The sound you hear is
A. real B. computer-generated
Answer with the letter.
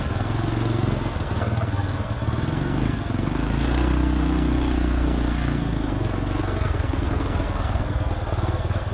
B